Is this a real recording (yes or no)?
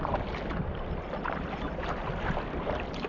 yes